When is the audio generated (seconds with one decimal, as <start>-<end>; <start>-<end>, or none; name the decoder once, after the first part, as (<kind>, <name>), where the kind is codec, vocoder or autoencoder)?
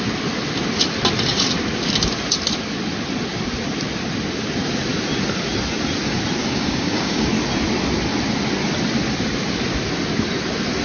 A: 6.4-7.3 (codec, DAC)